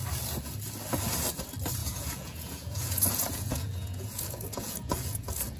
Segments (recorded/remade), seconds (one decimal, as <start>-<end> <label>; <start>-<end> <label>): 0.0-1.8 recorded; 1.8-5.6 remade